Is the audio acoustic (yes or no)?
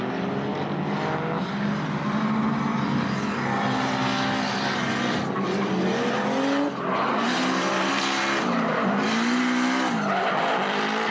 yes